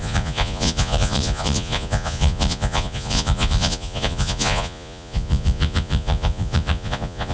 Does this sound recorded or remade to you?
remade